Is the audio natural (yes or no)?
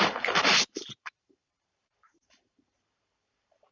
no